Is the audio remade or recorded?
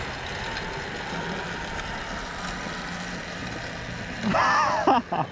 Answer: recorded